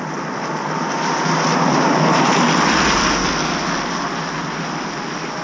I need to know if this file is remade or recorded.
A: recorded